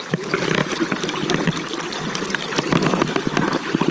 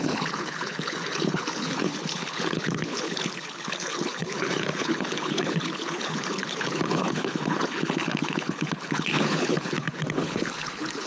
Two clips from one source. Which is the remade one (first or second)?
second